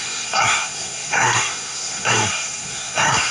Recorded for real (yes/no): no